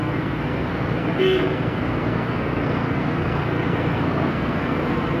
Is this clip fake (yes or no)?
yes